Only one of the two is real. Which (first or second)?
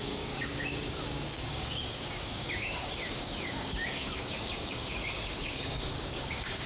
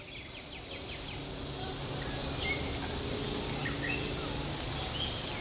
second